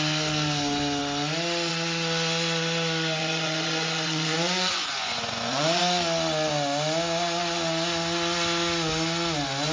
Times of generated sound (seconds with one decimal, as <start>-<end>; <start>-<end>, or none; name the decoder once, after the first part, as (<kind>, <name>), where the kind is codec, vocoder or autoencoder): 3.2-5.8 (vocoder, Vocos)